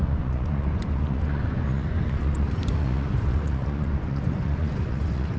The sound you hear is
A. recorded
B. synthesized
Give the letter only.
B